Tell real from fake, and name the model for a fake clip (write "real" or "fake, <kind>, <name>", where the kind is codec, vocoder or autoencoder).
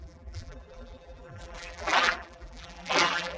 fake, vocoder, BigVGAN v2